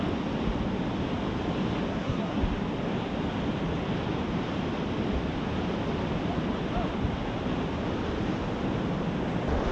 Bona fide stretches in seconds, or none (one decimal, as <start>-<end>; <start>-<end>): 0.0-1.9; 2.4-9.7